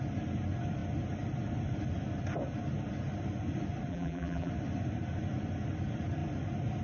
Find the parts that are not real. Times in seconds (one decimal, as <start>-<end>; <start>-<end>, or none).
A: 3.9-4.5